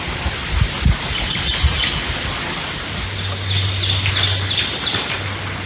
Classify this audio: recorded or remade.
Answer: recorded